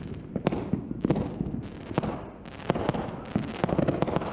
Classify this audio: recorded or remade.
recorded